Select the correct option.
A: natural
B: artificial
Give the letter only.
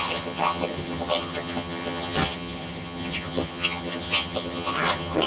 B